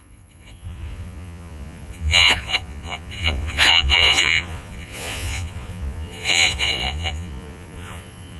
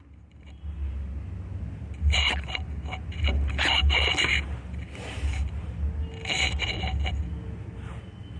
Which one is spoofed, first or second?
first